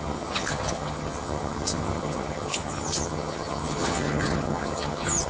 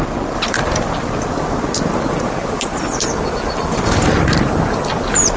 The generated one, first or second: first